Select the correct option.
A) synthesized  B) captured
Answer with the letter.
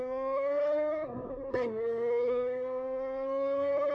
A